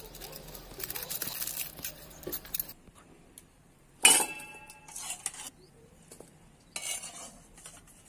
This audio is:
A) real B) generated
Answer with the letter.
A